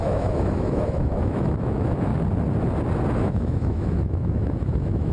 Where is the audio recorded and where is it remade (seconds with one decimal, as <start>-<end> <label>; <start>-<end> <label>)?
0.0-2.1 remade; 2.1-3.1 recorded; 3.1-5.1 remade